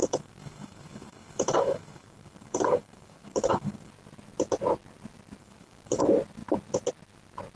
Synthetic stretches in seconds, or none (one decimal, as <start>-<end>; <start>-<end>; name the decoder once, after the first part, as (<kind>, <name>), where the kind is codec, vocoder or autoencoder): 0.0-3.9 (codec, DAC); 5.4-6.0